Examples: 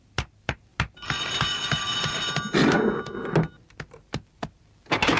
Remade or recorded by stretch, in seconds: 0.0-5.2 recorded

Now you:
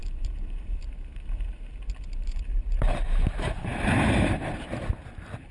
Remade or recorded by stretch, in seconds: 0.0-5.5 remade

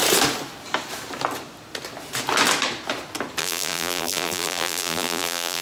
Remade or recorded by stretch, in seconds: 0.0-3.4 recorded; 3.4-5.6 remade

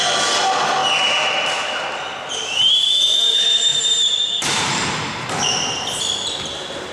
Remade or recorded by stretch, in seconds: 0.0-0.8 recorded; 0.8-1.6 remade; 1.6-2.1 recorded; 2.1-3.0 remade; 3.0-3.7 recorded; 3.7-6.0 remade; 6.0-6.9 recorded

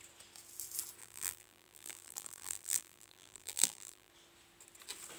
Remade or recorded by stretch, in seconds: 0.0-1.0 recorded; 1.0-4.1 remade; 4.1-5.2 recorded

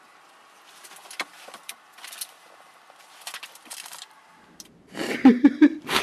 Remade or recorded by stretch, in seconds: 0.0-1.0 recorded; 1.0-4.2 remade; 4.2-5.0 recorded; 5.0-6.0 remade